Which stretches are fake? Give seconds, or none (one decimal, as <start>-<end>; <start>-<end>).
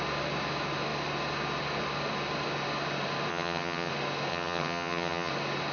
3.3-3.9; 4.3-5.3